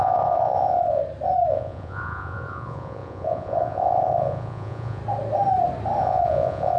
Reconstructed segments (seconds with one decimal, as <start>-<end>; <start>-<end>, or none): 0.0-1.0; 1.5-5.0; 6.0-6.8